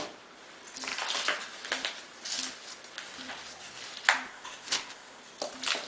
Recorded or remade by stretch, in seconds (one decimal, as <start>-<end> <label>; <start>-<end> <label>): 0.0-4.3 recorded; 4.3-5.2 remade; 5.2-5.9 recorded